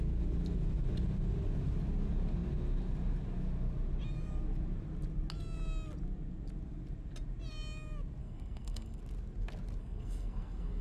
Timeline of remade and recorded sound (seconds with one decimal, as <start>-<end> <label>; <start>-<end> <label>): 0.0-8.2 recorded; 8.2-9.0 remade; 9.0-9.8 recorded; 9.8-10.8 remade